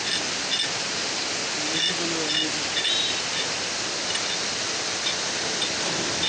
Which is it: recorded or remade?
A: recorded